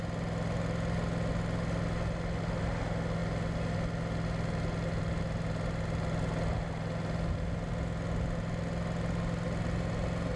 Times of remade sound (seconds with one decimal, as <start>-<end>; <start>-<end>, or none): none